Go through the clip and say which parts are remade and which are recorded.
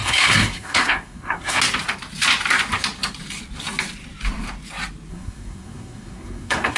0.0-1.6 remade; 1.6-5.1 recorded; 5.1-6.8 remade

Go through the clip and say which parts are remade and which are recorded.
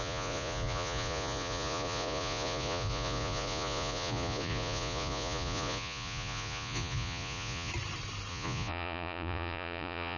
0.0-7.7 remade; 7.7-8.3 recorded; 8.3-10.2 remade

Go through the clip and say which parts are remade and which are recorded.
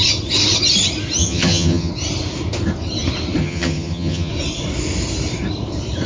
0.0-1.2 recorded; 1.2-1.9 remade; 1.9-3.4 recorded; 3.4-4.3 remade; 4.3-6.1 recorded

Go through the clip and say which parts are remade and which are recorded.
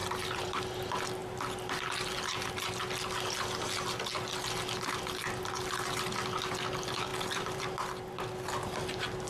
0.0-0.6 remade; 0.6-7.1 recorded; 7.1-7.7 remade; 7.7-9.3 recorded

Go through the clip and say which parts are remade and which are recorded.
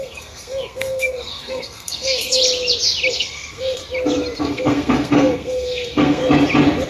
0.0-2.4 remade; 2.4-3.1 recorded; 3.1-3.8 remade; 3.8-4.4 recorded; 4.4-6.2 remade; 6.2-6.9 recorded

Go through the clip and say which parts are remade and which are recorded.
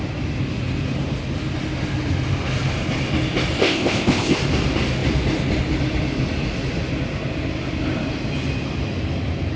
0.0-3.6 recorded; 3.6-4.4 remade; 4.4-9.6 recorded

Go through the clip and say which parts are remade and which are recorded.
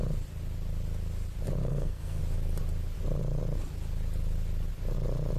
0.0-1.6 recorded; 1.6-2.2 remade; 2.2-5.4 recorded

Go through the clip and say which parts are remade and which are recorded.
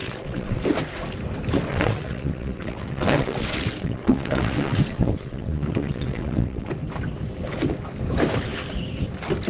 0.0-0.6 remade; 0.6-1.7 recorded; 1.7-6.7 remade; 6.7-9.5 recorded